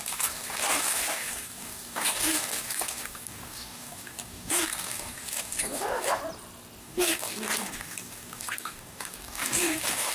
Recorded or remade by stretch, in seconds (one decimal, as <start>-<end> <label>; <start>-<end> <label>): 0.0-6.2 remade; 6.2-6.8 recorded; 6.8-10.1 remade